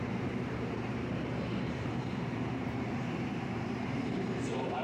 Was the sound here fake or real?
fake